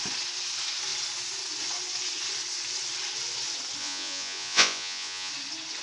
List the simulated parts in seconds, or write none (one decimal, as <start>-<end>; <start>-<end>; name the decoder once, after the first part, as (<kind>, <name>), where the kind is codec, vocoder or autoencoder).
3.8-5.3 (vocoder, Vocos)